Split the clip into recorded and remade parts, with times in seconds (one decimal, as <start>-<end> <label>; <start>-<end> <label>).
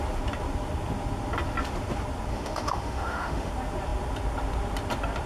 0.0-2.3 recorded; 2.3-3.5 remade; 3.5-5.3 recorded